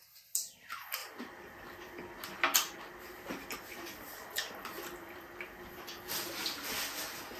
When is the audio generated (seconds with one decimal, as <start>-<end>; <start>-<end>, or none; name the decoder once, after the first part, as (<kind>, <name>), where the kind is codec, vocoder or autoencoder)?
none